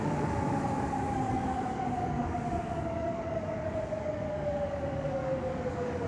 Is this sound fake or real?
fake